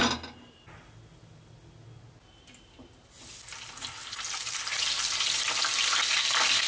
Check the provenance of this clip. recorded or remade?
recorded